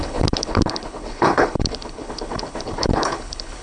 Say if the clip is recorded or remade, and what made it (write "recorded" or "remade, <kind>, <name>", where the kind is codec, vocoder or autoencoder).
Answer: remade, codec, HILCodec